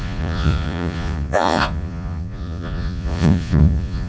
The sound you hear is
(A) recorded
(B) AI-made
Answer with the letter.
B